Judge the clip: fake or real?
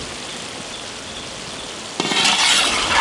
real